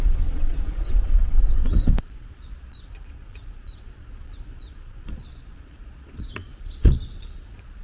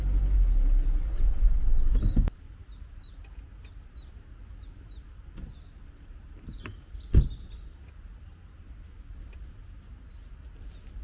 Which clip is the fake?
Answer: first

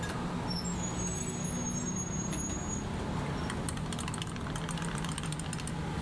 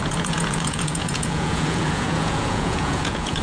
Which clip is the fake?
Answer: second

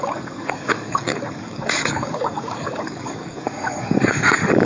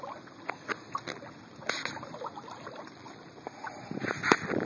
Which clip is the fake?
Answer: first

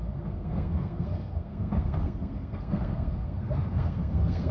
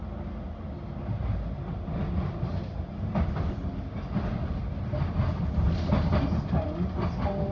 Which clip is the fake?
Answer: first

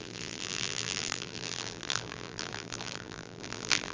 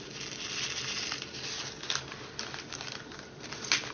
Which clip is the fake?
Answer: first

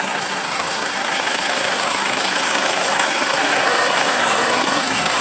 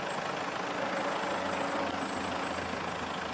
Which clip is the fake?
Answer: first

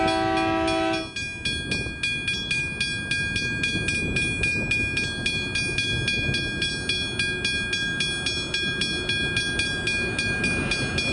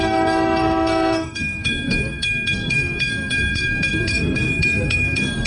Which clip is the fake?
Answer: second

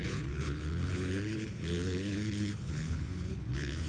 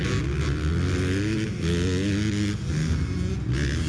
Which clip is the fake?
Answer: first